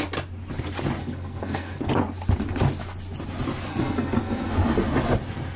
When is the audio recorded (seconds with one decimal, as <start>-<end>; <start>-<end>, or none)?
0.0-1.0; 1.8-3.7; 4.5-5.6